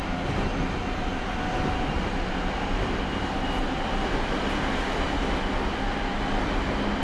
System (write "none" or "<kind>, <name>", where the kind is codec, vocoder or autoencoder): none